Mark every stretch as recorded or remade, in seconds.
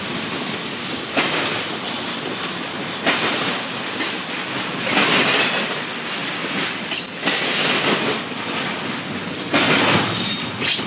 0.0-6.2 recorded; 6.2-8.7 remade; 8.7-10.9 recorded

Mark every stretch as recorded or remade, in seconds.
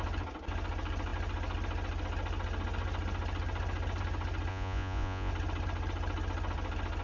0.0-4.5 recorded; 4.5-5.3 remade; 5.3-7.0 recorded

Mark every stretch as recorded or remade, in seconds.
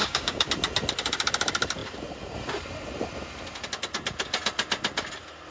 0.0-0.5 remade; 0.5-5.5 recorded